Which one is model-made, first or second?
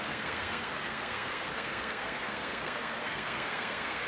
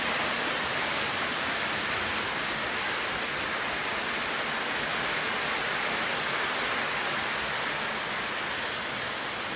first